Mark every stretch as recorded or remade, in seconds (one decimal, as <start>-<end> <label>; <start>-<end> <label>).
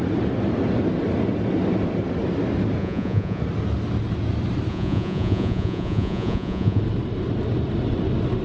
0.0-2.8 recorded; 2.8-3.4 remade; 3.4-4.7 recorded; 4.7-6.8 remade; 6.8-8.4 recorded